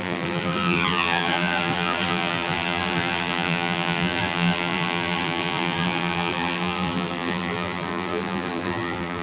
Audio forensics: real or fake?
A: fake